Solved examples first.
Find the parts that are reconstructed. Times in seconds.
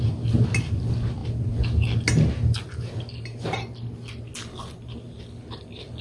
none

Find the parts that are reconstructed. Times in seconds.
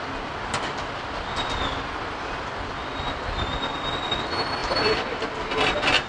none